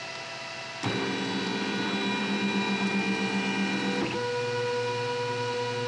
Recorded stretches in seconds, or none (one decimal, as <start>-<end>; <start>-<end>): 0.0-5.9